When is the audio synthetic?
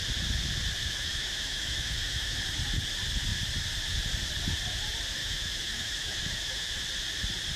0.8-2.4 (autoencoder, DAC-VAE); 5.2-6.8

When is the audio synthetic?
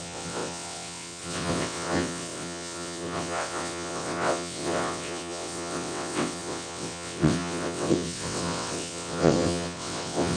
0.0-10.4 (vocoder, WaveNeXt)